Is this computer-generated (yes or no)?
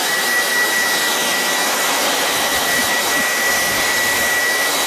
no